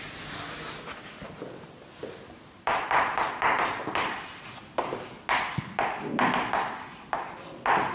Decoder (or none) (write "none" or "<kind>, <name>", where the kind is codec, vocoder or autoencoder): none